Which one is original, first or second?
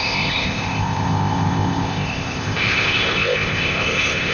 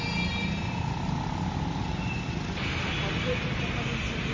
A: second